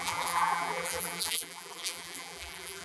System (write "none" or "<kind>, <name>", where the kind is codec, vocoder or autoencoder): vocoder, BigVGAN v2